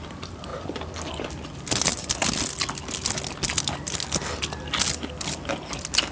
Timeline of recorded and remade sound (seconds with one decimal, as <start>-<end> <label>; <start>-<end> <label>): 0.0-6.1 recorded